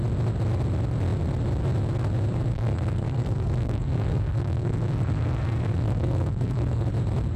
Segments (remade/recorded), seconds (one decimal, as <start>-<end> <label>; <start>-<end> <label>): 0.0-2.5 recorded; 2.5-6.9 remade; 6.9-7.4 recorded